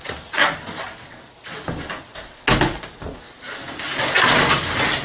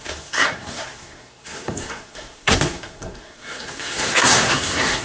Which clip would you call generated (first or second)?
second